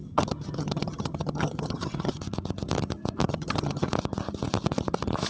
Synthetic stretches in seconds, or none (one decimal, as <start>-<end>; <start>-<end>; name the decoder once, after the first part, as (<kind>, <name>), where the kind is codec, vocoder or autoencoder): 0.0-2.2 (vocoder, HiFi-GAN); 3.3-3.9